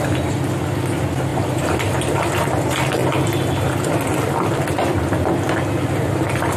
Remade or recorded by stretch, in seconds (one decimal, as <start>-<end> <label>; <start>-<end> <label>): 0.0-1.3 recorded; 1.3-2.6 remade; 2.6-6.6 recorded